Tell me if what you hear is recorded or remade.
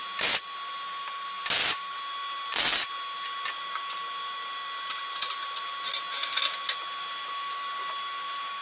recorded